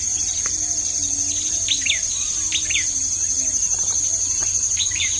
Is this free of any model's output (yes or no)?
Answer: yes